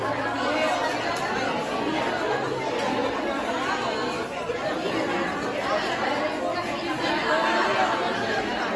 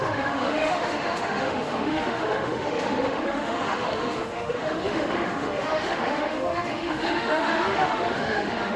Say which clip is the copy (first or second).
second